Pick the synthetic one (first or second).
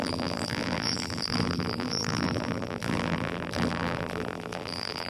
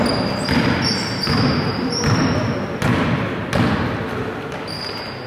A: first